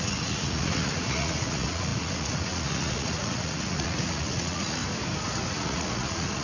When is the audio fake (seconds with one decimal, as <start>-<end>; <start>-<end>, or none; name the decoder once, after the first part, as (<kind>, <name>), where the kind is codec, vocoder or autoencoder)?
0.0-4.8 (vocoder, Vocos); 5.5-6.4